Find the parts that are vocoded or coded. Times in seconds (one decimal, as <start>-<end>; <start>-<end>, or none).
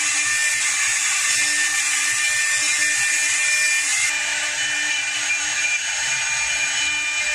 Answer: none